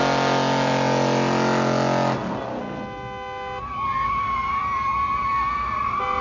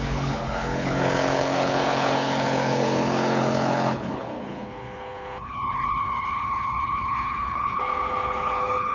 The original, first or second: first